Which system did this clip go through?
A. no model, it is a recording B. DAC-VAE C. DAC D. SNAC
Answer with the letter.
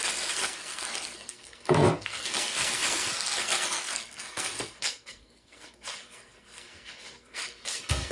D